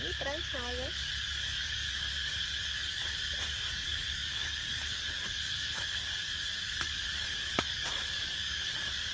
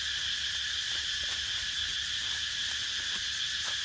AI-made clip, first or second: first